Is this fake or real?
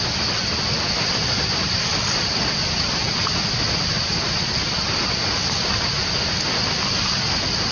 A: real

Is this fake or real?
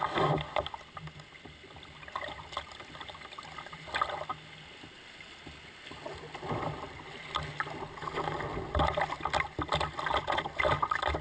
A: real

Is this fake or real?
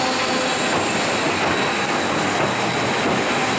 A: real